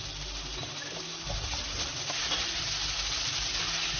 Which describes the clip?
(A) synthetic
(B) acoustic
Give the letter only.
B